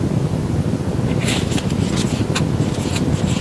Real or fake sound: real